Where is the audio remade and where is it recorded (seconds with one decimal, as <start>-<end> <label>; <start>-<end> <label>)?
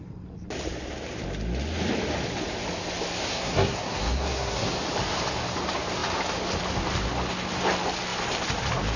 0.0-3.3 recorded; 3.3-4.7 remade; 4.7-9.0 recorded